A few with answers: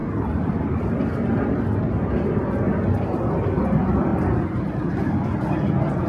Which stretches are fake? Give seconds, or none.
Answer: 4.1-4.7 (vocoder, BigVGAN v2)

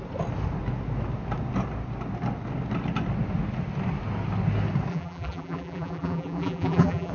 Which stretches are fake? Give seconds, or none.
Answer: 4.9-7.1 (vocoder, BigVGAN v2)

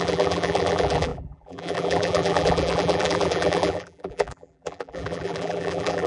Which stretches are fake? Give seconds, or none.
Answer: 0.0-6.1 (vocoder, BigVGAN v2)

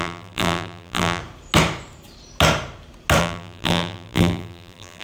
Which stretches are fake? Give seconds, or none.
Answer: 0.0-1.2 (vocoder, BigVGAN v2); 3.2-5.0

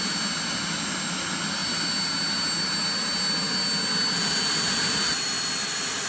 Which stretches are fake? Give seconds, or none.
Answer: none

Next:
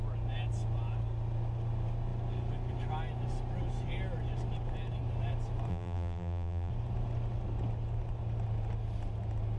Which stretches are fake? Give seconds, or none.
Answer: 5.7-6.7 (vocoder, BigVGAN v2)

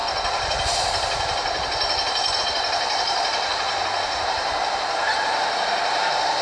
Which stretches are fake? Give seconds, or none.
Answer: 2.4-6.4 (vocoder, BigVGAN v2)

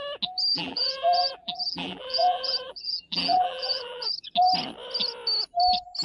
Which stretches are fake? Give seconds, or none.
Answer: 0.5-4.1 (vocoder, BigVGAN v2)